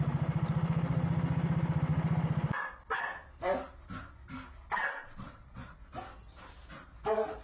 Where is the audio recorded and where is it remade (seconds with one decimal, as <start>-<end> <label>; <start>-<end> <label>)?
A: 0.0-5.0 recorded; 5.0-5.8 remade; 5.8-7.4 recorded

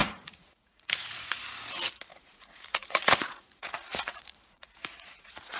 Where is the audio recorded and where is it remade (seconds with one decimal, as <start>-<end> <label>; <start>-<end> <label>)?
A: 0.0-1.4 remade; 1.4-2.1 recorded; 2.1-5.6 remade

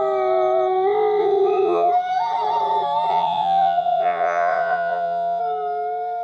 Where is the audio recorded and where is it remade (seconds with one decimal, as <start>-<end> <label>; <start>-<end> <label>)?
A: 0.0-1.2 recorded; 1.2-1.9 remade; 1.9-3.1 recorded; 3.1-5.4 remade; 5.4-6.2 recorded

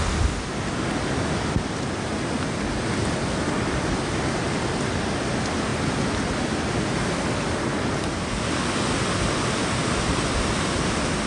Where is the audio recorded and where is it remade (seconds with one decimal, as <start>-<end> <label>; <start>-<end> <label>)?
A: 0.0-11.3 recorded

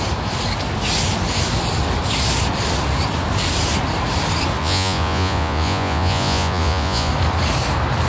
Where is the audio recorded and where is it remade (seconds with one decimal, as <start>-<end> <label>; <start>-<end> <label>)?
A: 0.0-4.6 recorded; 4.6-7.1 remade; 7.1-8.1 recorded

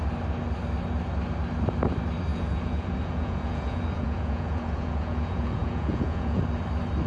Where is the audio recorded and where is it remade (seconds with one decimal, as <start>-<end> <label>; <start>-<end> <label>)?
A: 0.0-2.3 recorded; 2.3-6.4 remade; 6.4-7.1 recorded

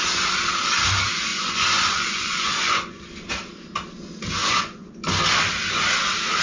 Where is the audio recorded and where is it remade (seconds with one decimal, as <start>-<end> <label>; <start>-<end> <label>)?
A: 0.0-1.3 recorded; 1.3-3.0 remade; 3.0-4.4 recorded; 4.4-4.9 remade; 4.9-6.4 recorded

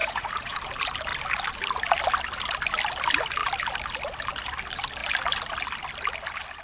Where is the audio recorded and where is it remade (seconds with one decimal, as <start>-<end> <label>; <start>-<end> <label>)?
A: 0.0-0.6 remade; 0.6-6.6 recorded